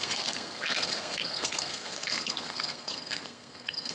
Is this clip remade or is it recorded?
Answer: remade